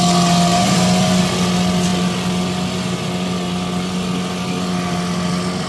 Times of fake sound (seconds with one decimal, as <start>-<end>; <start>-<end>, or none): 0.5-1.2